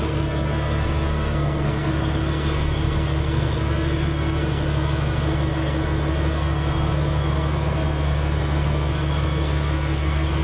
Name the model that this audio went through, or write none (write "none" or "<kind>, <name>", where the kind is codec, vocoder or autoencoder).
codec, SNAC